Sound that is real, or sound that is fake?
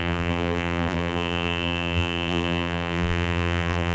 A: fake